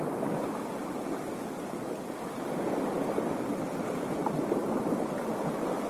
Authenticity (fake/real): real